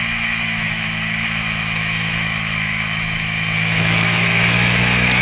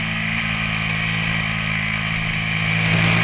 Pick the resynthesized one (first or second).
first